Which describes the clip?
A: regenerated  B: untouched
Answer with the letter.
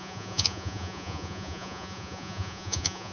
A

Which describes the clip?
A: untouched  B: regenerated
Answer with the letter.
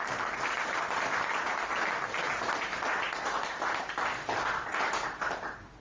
A